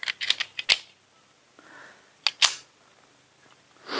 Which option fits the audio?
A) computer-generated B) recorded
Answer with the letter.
B